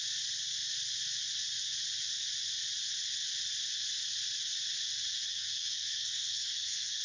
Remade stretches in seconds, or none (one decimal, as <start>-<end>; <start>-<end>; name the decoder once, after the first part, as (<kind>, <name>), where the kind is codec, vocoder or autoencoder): 5.3-7.0 (codec, SNAC)